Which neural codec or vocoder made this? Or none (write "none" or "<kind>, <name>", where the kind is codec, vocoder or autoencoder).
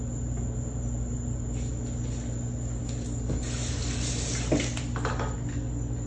none